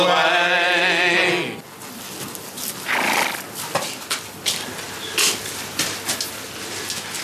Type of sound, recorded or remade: recorded